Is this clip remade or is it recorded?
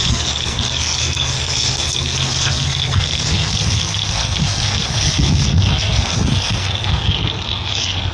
remade